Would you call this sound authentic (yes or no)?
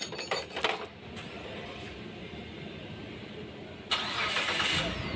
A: yes